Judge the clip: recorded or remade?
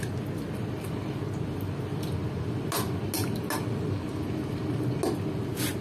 recorded